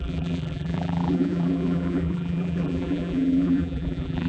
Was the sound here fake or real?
fake